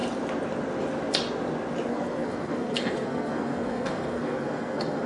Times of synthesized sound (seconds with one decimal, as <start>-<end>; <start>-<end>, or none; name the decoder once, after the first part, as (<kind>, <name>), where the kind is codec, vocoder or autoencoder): 1.9-5.1 (codec, SNAC)